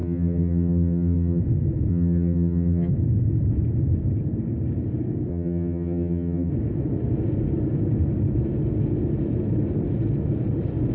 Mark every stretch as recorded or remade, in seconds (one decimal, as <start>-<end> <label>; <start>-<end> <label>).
0.0-1.4 remade; 1.4-1.9 recorded; 1.9-2.9 remade; 2.9-5.3 recorded; 5.3-6.5 remade; 6.5-10.9 recorded